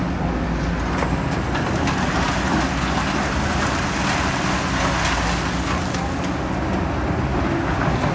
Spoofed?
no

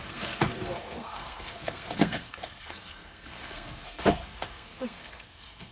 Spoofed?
yes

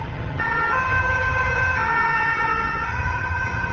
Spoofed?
yes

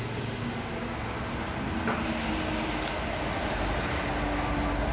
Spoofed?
no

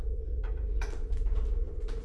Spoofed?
yes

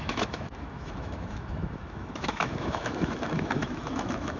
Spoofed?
yes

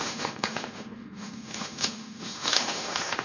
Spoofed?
yes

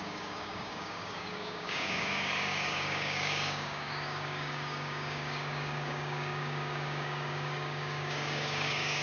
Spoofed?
yes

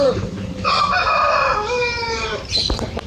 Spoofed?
yes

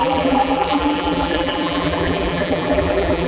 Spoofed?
yes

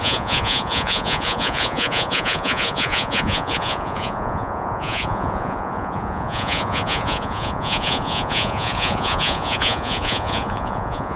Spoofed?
yes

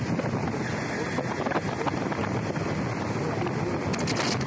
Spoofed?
no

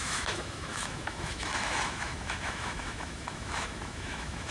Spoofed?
yes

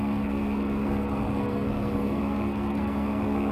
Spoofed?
yes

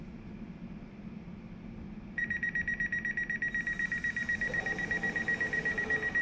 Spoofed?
yes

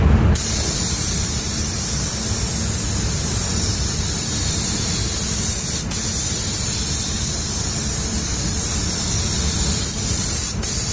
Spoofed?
no